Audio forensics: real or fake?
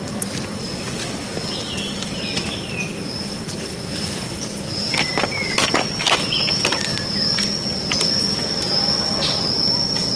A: real